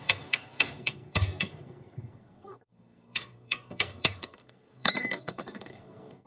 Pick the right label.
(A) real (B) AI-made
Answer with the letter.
B